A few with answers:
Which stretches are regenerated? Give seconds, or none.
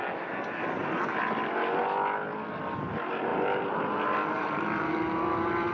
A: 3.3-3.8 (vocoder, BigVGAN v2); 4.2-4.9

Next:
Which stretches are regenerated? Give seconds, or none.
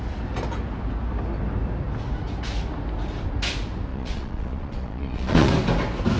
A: 3.9-5.5 (vocoder, Vocos)